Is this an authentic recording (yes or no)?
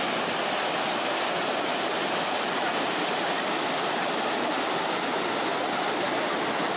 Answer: yes